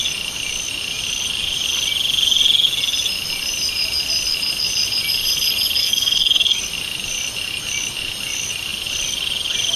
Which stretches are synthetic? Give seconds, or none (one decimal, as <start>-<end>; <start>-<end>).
5.8-6.6